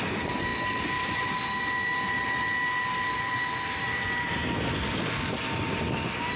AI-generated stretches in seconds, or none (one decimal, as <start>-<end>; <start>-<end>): none